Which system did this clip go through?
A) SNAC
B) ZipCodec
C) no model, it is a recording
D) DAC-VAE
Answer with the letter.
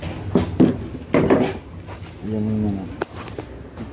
C